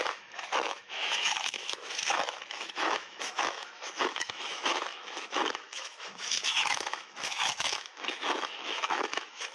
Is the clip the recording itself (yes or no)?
no